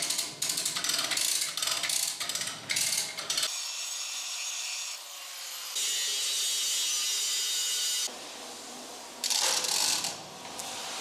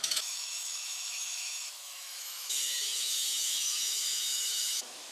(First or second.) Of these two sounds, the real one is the first